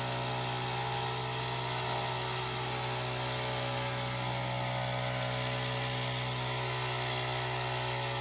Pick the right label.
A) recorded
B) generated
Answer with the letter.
A